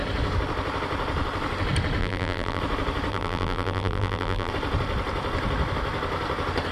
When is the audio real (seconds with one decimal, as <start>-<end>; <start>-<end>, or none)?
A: 0.0-2.0; 2.6-3.1; 4.5-6.7